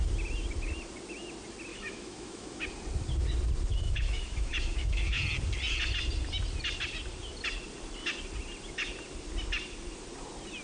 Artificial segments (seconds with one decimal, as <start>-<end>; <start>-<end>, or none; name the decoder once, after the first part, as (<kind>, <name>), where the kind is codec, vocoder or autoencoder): 1.7-2.6 (autoencoder, DAC-VAE); 3.7-5.2